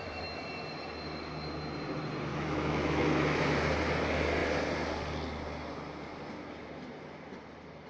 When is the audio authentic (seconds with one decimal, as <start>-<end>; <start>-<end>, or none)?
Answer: 0.0-2.3; 3.4-7.9